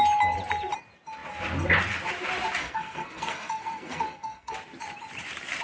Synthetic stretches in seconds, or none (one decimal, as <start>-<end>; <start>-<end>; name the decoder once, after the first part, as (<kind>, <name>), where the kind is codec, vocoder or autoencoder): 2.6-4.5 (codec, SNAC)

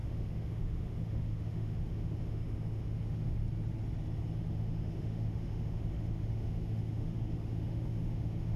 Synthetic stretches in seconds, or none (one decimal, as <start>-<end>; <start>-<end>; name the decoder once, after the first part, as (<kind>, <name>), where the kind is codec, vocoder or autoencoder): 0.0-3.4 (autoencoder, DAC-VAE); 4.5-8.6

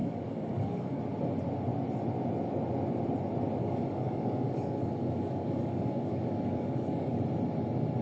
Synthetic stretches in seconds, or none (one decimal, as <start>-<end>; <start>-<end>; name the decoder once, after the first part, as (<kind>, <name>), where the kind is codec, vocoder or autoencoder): 0.0-1.0 (codec, DAC); 3.6-7.2

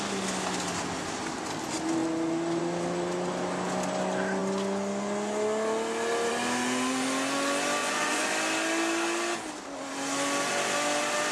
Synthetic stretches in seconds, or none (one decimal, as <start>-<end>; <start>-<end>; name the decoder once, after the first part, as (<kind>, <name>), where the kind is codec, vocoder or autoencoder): 7.8-8.3 (vocoder, Vocos)

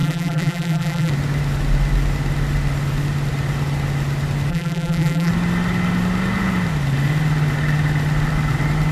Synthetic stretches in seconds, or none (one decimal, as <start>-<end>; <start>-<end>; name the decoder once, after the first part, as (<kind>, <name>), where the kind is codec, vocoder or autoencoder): 0.0-1.1 (vocoder, BigVGAN v2); 4.5-5.3